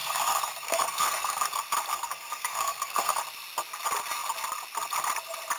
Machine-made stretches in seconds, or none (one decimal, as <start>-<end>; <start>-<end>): 0.0-1.5; 1.9-3.2